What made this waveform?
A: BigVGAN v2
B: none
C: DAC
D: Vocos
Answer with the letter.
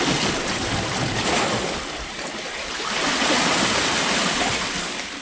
B